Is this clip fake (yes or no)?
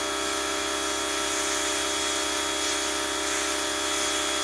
no